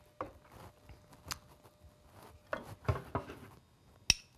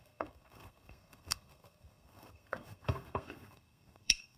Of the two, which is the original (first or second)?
first